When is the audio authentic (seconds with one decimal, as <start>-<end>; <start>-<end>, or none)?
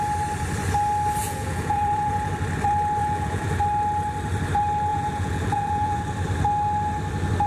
0.0-1.2; 2.3-3.0; 3.6-4.9; 6.0-7.5